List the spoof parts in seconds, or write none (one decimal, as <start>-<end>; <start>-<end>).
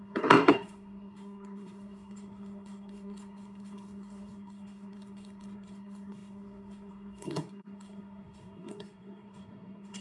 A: 0.0-10.0